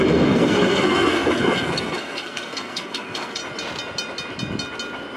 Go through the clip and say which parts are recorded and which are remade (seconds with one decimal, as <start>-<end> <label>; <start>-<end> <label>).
0.0-3.4 remade; 3.4-5.2 recorded